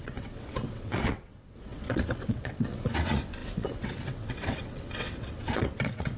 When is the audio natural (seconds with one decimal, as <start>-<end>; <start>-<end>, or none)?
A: none